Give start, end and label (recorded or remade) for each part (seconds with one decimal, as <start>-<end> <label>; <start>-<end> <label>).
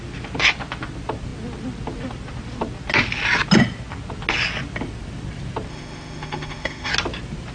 0.0-5.7 recorded; 5.7-6.9 remade; 6.9-7.5 recorded